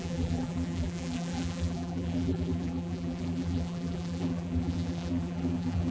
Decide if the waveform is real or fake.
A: fake